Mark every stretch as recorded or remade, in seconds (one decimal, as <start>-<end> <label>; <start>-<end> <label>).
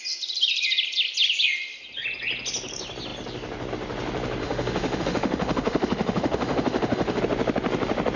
0.0-4.4 recorded; 4.4-7.2 remade; 7.2-8.2 recorded